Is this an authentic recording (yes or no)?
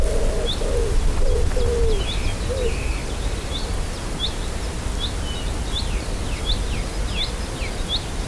yes